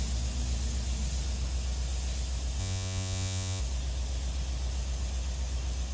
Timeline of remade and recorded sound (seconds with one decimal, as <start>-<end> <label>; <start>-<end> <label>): 0.0-2.6 recorded; 2.6-3.6 remade; 3.6-5.9 recorded